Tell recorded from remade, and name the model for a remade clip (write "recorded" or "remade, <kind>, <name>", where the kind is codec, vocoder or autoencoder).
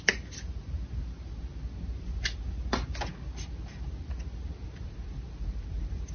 recorded